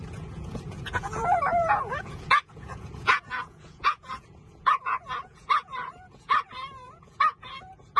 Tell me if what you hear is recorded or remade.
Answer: remade